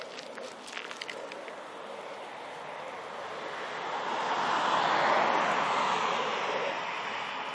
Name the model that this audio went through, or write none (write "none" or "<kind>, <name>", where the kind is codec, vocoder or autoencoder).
none